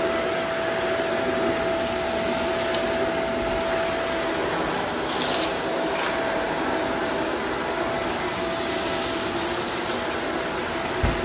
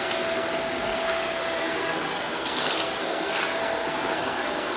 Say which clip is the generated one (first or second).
second